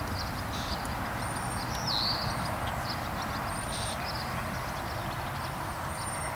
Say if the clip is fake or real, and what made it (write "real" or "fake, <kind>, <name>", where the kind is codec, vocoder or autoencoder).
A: real